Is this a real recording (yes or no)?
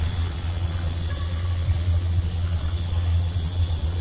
no